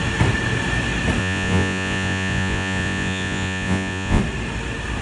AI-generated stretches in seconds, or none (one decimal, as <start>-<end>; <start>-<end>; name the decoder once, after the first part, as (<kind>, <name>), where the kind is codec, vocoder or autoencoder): 1.2-4.2 (vocoder, Vocos)